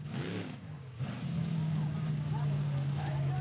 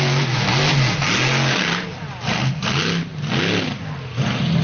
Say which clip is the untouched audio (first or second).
second